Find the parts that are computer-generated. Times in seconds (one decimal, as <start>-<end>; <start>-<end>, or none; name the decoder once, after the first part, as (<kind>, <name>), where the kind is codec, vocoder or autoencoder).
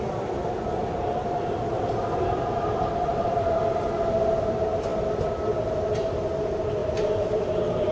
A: 0.8-1.4 (vocoder, BigVGAN v2); 6.8-7.4